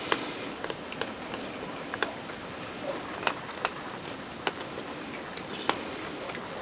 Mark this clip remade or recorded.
recorded